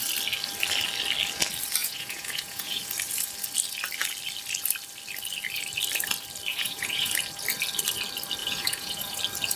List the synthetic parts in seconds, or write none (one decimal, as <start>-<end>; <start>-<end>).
1.8-2.8; 6.5-7.1; 8.4-9.2